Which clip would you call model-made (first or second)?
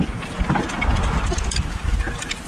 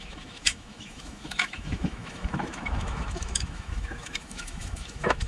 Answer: second